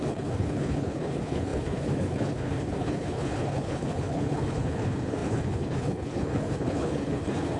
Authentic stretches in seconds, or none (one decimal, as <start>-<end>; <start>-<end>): none